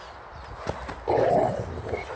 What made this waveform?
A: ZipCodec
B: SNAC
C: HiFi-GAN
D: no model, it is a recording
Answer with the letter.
D